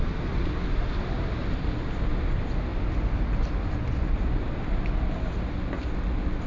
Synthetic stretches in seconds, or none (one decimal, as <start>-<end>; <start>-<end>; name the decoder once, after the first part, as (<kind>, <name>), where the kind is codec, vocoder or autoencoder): none